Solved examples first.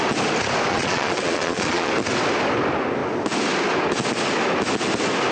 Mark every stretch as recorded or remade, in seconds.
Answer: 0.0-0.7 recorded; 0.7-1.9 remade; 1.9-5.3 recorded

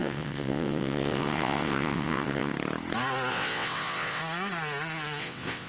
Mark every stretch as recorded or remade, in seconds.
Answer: 0.0-2.5 remade; 2.5-3.3 recorded; 3.3-4.2 remade; 4.2-5.2 recorded; 5.2-5.7 remade

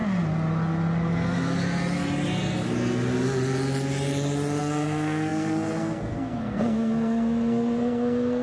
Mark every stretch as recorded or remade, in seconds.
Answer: 0.0-4.6 recorded; 4.6-8.4 remade